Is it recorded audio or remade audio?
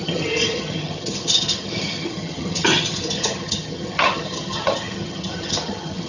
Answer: remade